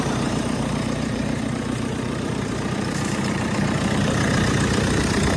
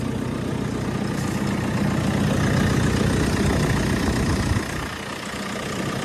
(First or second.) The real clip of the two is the second